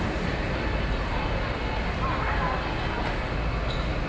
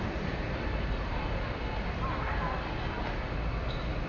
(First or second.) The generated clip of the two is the second